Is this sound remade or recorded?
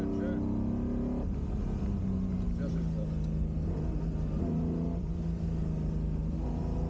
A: recorded